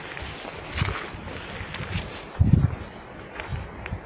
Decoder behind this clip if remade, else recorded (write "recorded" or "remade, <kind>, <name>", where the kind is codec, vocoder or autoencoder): recorded